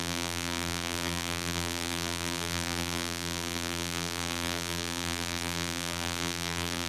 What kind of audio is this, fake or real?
fake